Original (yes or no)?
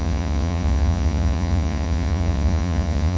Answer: no